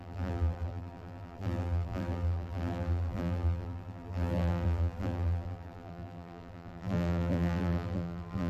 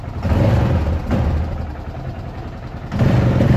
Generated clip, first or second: first